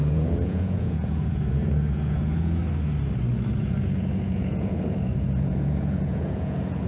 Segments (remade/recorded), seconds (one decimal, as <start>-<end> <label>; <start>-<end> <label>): 0.0-2.6 remade; 2.6-3.6 recorded; 3.6-6.9 remade